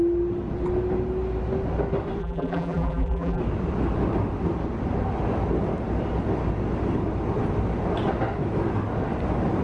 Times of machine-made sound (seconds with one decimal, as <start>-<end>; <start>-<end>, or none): 2.2-3.4